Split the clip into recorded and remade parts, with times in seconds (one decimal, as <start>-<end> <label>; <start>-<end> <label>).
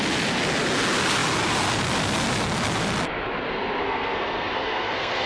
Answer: 0.0-3.8 recorded; 3.8-5.3 remade